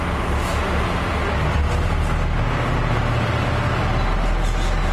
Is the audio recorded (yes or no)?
yes